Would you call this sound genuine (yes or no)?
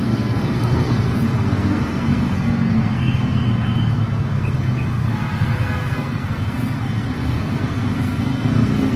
no